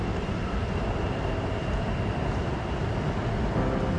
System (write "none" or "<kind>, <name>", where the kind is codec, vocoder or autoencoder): none